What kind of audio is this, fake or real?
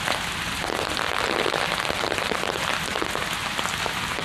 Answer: real